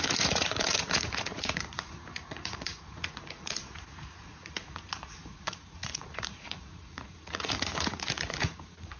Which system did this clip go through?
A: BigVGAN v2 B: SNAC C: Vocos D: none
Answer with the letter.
C